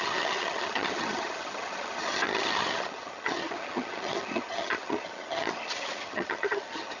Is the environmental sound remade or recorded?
remade